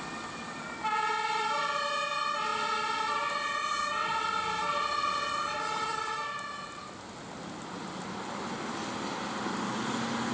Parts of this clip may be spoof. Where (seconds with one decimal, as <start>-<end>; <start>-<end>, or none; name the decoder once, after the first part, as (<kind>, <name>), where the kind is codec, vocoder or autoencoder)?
none